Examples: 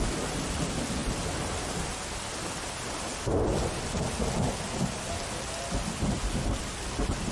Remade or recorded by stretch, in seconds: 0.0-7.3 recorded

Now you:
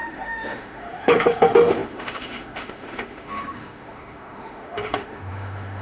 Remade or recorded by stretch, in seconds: 0.0-5.8 remade

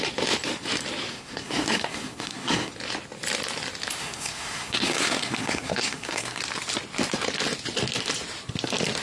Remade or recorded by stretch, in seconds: 0.0-1.1 recorded; 1.1-2.7 remade; 2.7-4.0 recorded; 4.0-6.4 remade; 6.4-9.0 recorded

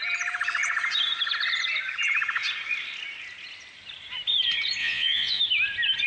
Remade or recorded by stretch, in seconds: 0.0-4.8 recorded; 4.8-5.4 remade; 5.4-6.1 recorded

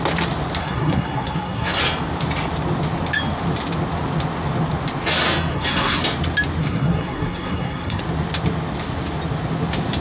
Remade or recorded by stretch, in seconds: 0.0-0.6 recorded; 0.6-1.8 remade; 1.8-5.5 recorded; 5.5-6.0 remade; 6.0-6.6 recorded; 6.6-8.0 remade; 8.0-10.0 recorded

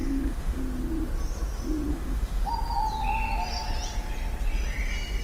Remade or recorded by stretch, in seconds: 0.0-0.6 remade; 0.6-1.9 recorded; 1.9-2.5 remade; 2.5-5.2 recorded

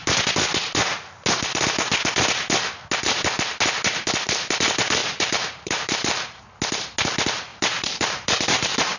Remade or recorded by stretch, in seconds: 0.0-5.0 recorded; 5.0-6.4 remade; 6.4-7.5 recorded; 7.5-9.0 remade

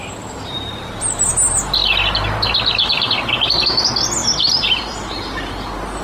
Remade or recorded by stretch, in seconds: 0.0-4.2 recorded; 4.2-5.6 remade; 5.6-6.0 recorded